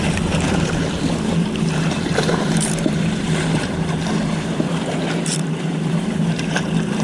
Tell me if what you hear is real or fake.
fake